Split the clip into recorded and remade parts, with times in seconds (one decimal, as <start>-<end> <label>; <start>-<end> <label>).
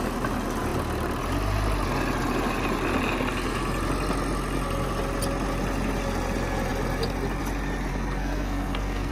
0.0-7.9 recorded; 7.9-9.1 remade